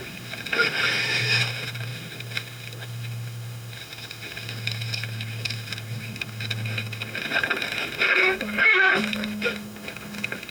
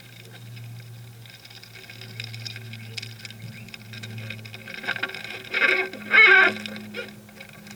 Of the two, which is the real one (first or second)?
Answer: second